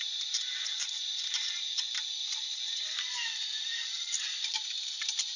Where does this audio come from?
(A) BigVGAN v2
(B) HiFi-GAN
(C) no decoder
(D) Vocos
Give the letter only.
A